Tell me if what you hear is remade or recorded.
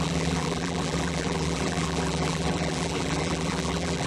remade